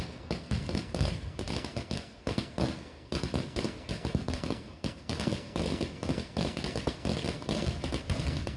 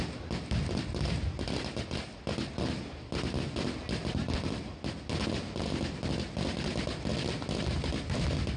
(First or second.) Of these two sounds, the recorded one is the second